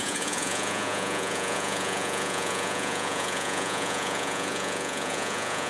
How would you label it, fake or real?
fake